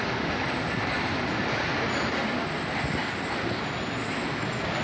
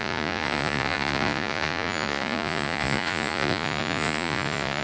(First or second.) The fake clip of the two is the second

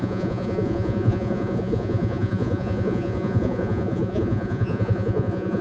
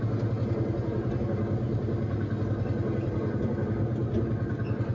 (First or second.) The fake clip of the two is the first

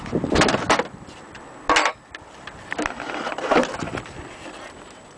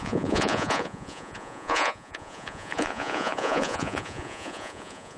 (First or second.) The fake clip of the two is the second